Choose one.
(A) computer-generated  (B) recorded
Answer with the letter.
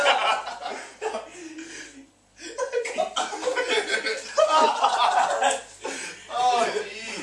B